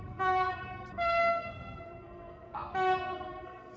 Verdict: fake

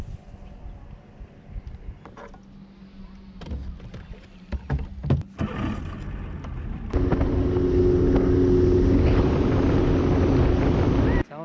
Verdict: real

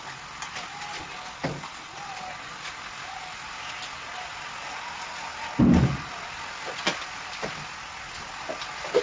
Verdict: real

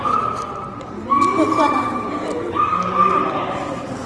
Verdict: fake